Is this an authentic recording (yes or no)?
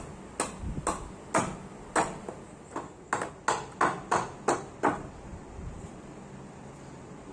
yes